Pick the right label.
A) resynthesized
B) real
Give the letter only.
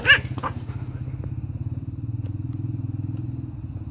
A